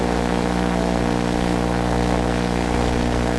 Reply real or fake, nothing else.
fake